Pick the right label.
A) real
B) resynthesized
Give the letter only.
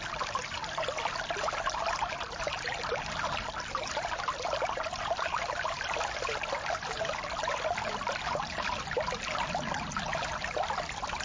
A